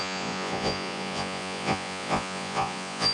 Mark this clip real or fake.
fake